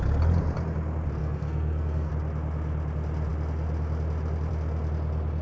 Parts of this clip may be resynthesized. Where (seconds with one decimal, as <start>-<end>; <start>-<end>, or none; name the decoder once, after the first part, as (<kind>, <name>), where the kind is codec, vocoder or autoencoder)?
1.2-2.1 (codec, SNAC)